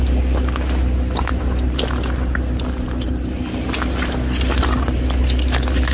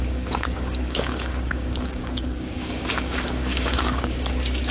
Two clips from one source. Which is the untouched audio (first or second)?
first